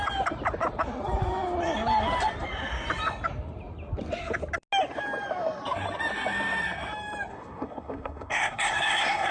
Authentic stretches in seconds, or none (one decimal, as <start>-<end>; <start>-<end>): 0.0-7.3